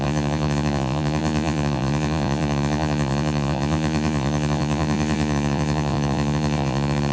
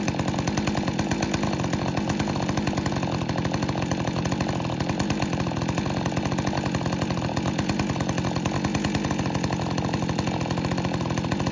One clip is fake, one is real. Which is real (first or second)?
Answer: second